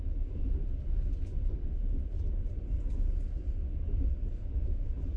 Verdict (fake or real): real